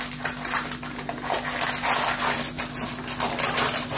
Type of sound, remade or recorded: recorded